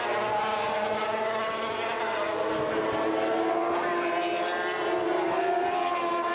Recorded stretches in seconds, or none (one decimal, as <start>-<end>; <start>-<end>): 0.0-6.3